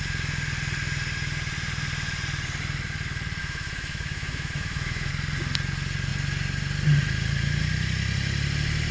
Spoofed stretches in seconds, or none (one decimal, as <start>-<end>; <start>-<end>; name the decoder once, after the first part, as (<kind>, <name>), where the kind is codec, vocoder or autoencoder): 3.4-5.1 (autoencoder, DAC-VAE)